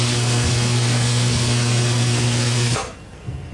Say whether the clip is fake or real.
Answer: fake